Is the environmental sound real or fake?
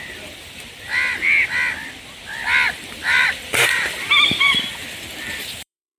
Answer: fake